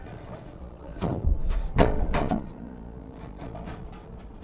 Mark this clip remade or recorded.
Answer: remade